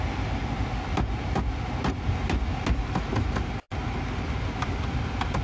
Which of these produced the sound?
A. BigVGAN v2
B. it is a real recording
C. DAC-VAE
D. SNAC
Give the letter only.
B